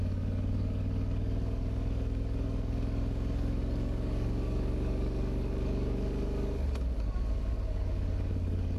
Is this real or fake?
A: fake